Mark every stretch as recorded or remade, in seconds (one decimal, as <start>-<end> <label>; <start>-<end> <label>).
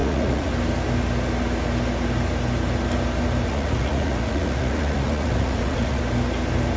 0.0-0.5 remade; 0.5-3.5 recorded; 3.5-6.0 remade; 6.0-6.8 recorded